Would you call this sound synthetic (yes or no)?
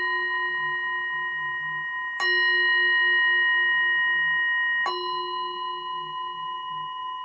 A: no